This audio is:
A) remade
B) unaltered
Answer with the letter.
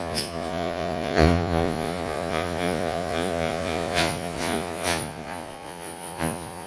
A